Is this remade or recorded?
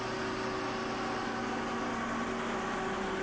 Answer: recorded